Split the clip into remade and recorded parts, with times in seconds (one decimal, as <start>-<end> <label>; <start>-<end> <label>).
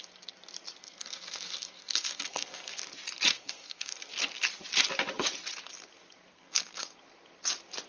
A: 0.0-0.8 recorded; 0.8-2.8 remade; 2.8-3.3 recorded; 3.3-4.1 remade; 4.1-6.3 recorded; 6.3-6.9 remade; 6.9-7.9 recorded